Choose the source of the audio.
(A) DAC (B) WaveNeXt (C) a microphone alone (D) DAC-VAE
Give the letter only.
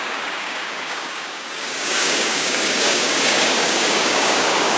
A